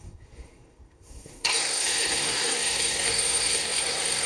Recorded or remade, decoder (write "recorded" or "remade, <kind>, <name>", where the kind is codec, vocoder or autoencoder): remade, codec, SNAC